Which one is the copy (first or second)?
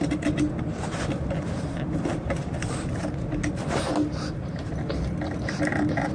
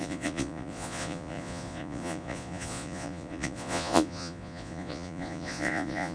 second